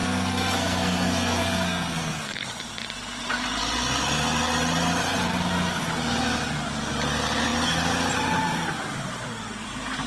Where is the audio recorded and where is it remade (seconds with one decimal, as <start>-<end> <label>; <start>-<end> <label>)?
0.0-2.5 remade; 2.5-10.1 recorded